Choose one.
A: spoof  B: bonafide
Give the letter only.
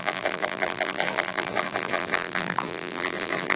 A